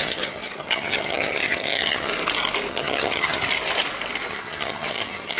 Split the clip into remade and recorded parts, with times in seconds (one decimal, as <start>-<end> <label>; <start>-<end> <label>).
0.0-2.1 remade; 2.1-2.7 recorded; 2.7-3.4 remade; 3.4-4.3 recorded; 4.3-5.4 remade